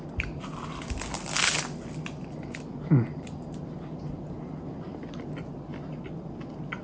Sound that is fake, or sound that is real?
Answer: real